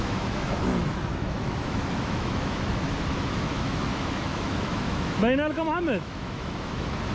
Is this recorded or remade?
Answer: remade